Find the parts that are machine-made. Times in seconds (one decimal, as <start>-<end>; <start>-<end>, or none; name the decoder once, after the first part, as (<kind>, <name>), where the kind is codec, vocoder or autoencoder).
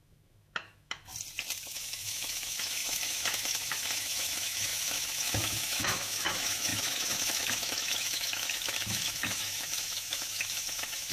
0.0-1.1 (autoencoder, DAC-VAE); 1.6-11.1